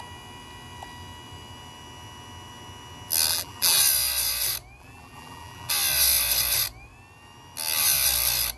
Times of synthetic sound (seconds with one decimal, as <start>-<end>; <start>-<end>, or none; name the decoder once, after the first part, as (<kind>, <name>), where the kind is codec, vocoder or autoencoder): 3.3-3.8 (vocoder, BigVGAN v2); 4.8-5.7